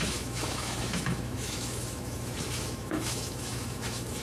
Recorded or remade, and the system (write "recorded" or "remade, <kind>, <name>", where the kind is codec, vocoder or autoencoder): remade, autoencoder, DAC-VAE